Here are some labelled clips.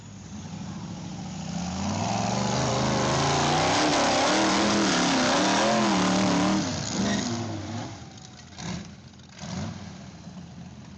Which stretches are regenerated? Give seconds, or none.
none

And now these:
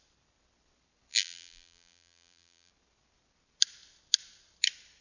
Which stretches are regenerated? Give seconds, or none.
1.1-2.7 (vocoder, BigVGAN v2)